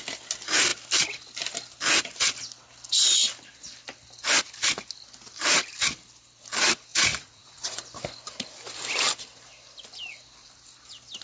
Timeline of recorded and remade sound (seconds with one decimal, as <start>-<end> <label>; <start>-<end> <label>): 0.0-6.9 recorded; 6.9-7.8 remade; 7.8-11.2 recorded